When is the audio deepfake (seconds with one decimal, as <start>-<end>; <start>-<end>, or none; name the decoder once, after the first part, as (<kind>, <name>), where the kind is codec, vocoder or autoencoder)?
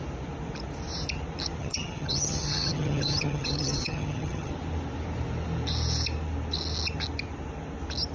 1.6-4.5 (vocoder, HiFi-GAN)